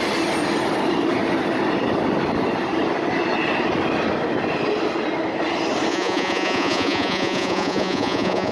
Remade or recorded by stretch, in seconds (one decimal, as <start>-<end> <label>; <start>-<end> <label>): 0.0-5.9 recorded; 5.9-8.5 remade